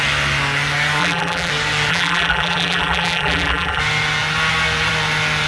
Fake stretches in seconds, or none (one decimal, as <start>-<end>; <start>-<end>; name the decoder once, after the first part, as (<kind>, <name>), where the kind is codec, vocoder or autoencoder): 1.0-1.5 (vocoder, BigVGAN v2); 1.9-3.8